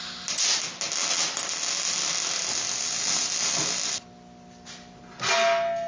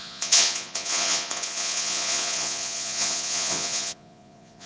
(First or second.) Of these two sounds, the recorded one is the first